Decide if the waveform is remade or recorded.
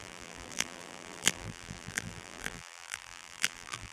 remade